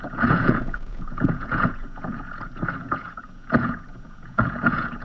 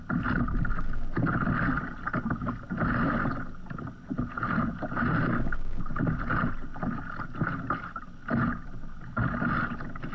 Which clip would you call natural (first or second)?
second